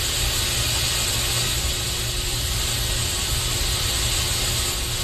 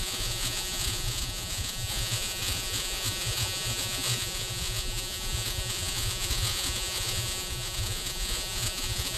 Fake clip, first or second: second